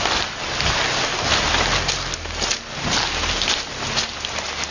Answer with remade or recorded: recorded